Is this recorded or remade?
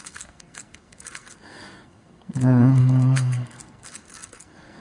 remade